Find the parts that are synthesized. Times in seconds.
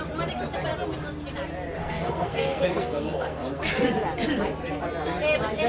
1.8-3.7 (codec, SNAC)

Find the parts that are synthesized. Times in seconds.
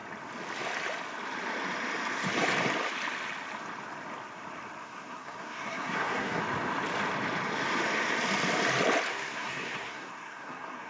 4.8-6.4 (codec, SNAC); 9.1-10.9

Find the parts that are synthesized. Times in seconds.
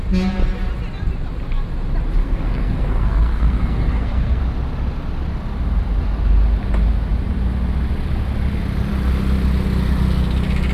2.2-4.4 (codec, SNAC)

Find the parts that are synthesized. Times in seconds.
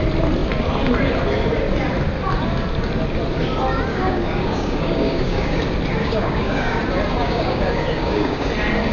3.9-5.6 (codec, DAC); 6.0-6.8; 7.2-8.5